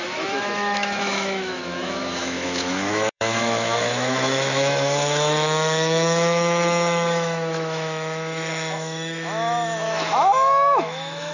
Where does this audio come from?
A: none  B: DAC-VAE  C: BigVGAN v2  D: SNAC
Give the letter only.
B